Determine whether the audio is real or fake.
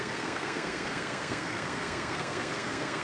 fake